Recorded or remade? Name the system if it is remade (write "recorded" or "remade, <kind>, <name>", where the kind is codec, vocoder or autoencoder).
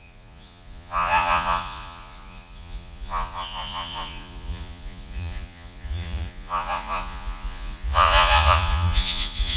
remade, vocoder, Vocos